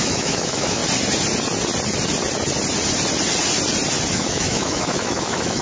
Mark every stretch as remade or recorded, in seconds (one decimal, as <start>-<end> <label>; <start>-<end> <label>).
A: 0.0-0.8 remade; 0.8-4.1 recorded; 4.1-5.6 remade